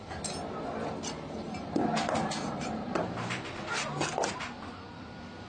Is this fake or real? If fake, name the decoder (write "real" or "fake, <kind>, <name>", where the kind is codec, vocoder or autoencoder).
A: real